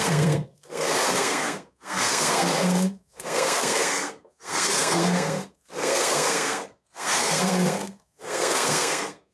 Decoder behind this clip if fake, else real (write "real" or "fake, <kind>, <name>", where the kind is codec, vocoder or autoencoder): fake, codec, SNAC